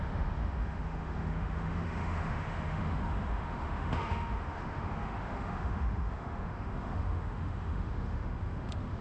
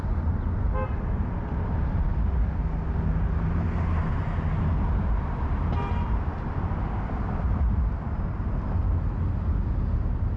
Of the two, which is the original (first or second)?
second